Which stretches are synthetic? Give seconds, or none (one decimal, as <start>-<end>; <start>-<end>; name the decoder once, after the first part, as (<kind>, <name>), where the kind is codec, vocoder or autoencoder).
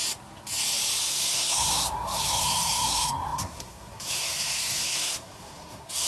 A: 1.1-6.1 (codec, SNAC)